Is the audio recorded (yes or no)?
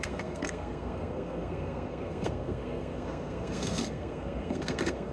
no